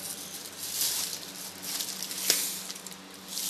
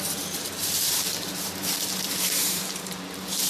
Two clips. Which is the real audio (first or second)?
first